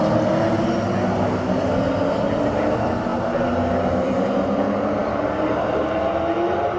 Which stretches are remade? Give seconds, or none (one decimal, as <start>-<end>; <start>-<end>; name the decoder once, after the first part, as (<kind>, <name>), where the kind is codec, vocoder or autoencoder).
5.0-5.8 (vocoder, BigVGAN v2)